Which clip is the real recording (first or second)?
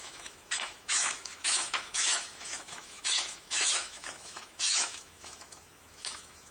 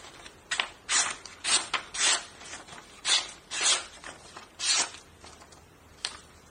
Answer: second